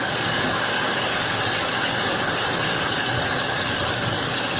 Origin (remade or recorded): remade